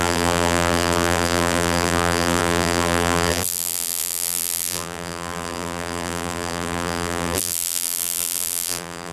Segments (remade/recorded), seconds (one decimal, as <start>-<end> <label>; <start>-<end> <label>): 0.0-9.1 remade